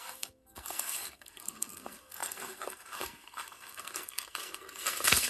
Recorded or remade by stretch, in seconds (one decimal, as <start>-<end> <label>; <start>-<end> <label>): 0.0-5.3 remade